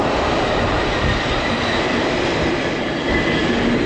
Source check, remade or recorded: remade